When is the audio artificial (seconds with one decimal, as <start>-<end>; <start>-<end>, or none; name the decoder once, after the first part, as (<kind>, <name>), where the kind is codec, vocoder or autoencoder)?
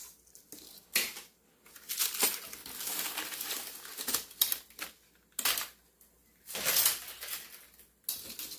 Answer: none